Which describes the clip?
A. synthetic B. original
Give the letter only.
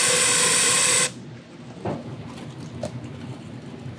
B